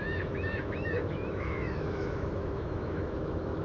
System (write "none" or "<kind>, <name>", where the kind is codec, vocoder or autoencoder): autoencoder, DAC-VAE